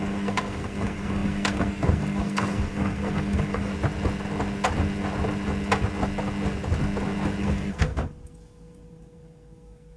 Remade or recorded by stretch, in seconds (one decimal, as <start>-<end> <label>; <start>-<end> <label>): 0.0-3.7 remade; 3.7-7.4 recorded; 7.4-10.0 remade